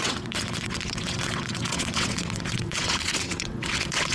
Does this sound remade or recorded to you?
remade